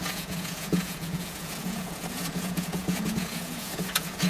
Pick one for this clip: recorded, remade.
remade